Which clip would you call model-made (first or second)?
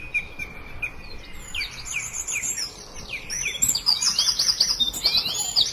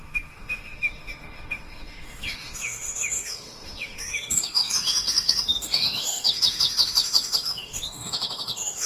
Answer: second